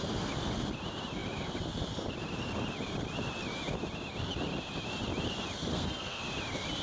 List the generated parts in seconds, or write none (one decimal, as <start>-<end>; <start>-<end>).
5.7-6.2

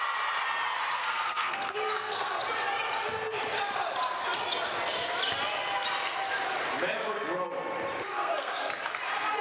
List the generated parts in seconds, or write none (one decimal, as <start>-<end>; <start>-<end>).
1.0-2.3; 8.1-8.7

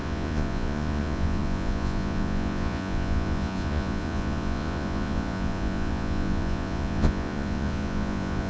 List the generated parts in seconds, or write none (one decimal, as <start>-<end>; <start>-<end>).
0.0-8.5

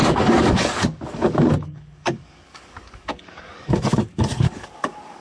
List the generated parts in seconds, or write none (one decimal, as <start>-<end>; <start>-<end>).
0.0-5.2